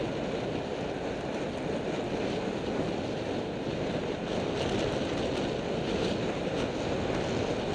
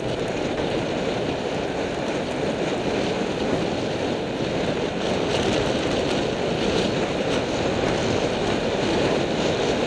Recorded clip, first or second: first